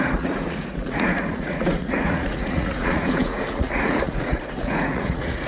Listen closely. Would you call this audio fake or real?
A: fake